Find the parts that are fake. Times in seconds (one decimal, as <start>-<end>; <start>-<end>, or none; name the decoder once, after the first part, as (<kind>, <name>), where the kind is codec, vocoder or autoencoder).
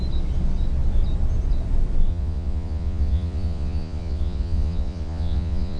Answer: 2.1-5.8 (vocoder, Vocos)